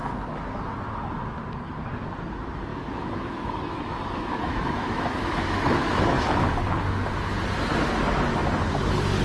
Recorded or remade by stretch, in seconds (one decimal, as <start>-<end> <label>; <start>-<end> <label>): 0.0-2.7 recorded; 2.7-6.5 remade; 6.5-9.2 recorded